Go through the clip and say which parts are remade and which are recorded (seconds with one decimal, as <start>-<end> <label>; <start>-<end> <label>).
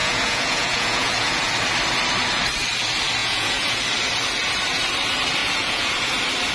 0.0-1.5 remade; 1.5-3.2 recorded; 3.2-3.8 remade; 3.8-5.4 recorded; 5.4-5.9 remade; 5.9-6.5 recorded